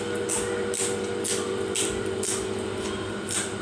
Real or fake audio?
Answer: real